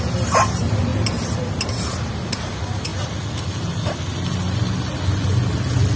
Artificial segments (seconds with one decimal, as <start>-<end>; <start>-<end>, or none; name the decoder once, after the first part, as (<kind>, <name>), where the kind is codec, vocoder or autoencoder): none